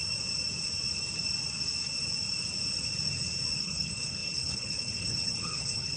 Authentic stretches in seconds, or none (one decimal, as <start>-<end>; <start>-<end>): 0.0-3.6